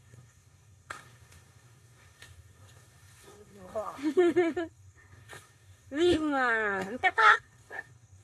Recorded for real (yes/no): no